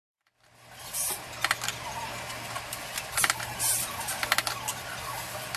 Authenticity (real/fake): real